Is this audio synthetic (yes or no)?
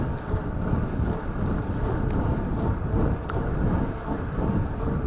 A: no